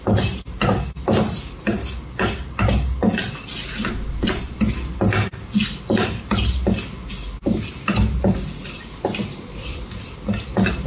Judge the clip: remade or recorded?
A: recorded